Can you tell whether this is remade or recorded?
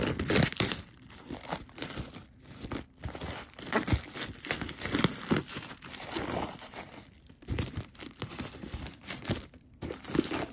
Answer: remade